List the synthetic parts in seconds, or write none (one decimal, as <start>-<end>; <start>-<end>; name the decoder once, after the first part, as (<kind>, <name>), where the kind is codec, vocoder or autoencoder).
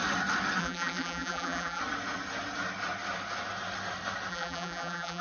0.6-1.8 (vocoder, BigVGAN v2); 4.3-5.2